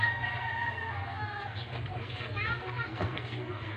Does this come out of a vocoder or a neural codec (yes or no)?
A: yes